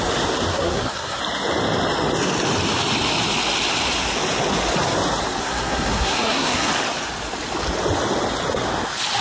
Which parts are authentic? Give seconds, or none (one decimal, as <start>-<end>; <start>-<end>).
0.0-0.5; 1.2-5.4; 6.7-9.2